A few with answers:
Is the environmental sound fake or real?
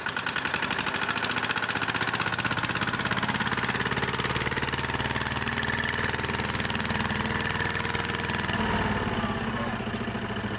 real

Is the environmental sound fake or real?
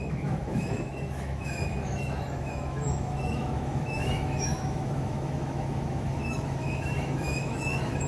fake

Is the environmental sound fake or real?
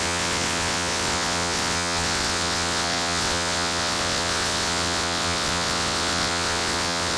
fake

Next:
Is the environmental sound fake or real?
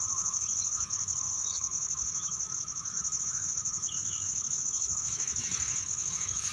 fake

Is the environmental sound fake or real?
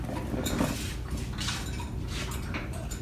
real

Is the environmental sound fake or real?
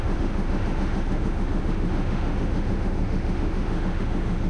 fake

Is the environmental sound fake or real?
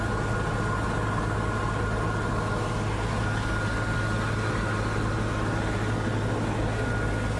real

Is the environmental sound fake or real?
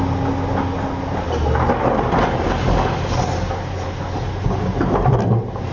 real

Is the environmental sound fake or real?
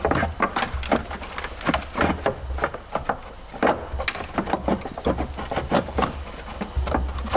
real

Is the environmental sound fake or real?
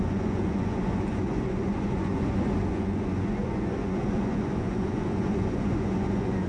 fake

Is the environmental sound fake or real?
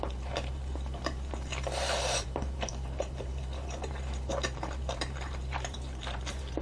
fake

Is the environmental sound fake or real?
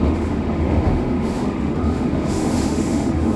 fake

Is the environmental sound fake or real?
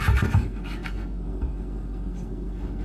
fake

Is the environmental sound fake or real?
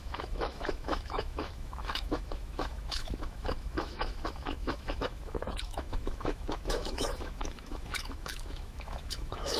fake